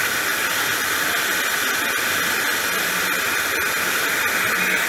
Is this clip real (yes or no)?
yes